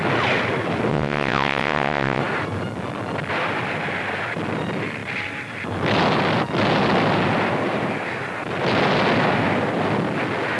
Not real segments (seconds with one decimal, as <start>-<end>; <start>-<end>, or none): 0.9-2.2